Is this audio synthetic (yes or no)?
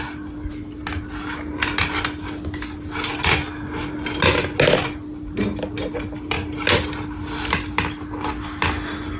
no